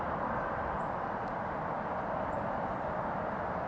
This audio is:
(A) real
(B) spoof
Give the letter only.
A